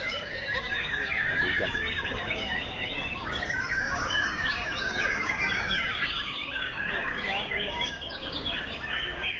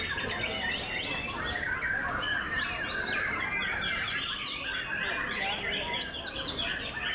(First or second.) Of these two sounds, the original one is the second